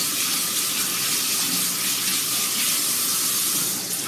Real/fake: real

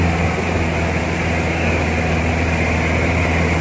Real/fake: real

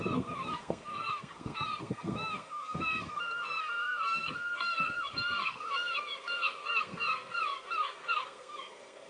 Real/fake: fake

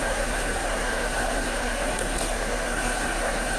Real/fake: fake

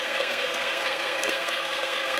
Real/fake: fake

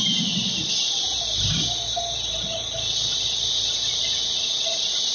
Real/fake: real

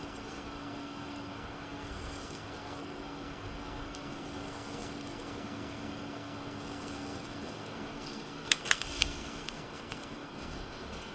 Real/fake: fake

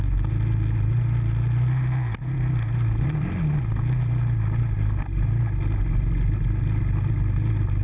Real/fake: real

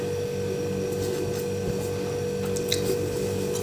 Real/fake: real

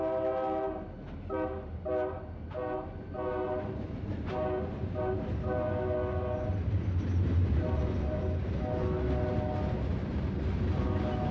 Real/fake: real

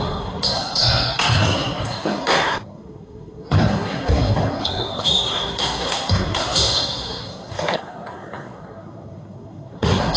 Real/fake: fake